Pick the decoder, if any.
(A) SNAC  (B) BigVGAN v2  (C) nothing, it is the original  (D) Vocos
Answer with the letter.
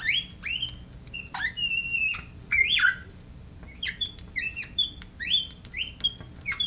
C